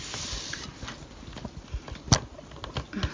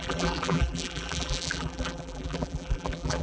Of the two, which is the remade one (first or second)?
second